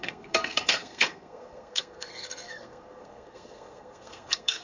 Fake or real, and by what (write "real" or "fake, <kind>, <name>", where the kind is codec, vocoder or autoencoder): fake, codec, SNAC